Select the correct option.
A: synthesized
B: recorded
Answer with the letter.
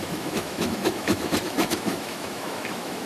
A